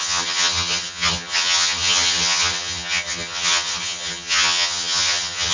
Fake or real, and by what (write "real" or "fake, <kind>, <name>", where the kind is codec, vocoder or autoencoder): fake, vocoder, HiFi-GAN